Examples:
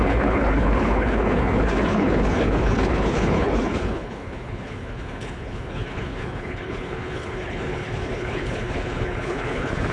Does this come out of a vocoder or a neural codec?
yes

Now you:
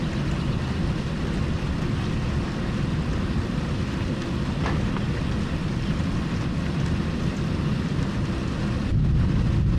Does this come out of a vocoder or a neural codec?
no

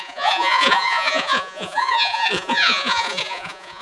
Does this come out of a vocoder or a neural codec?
yes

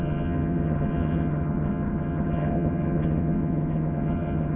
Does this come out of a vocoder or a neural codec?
yes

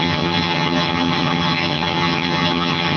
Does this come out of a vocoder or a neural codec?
yes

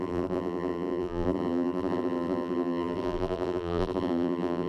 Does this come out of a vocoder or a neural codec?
yes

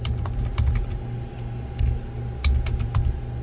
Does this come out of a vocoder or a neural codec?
no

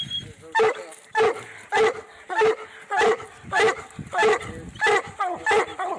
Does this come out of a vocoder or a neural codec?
no